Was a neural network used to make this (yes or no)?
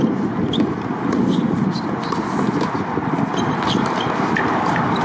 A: no